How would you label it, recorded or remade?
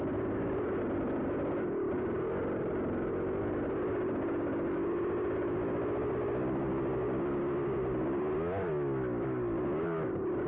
recorded